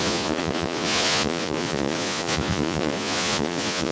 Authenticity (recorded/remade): remade